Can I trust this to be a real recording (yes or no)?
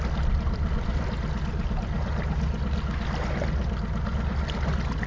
yes